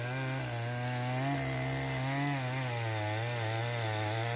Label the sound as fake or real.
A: real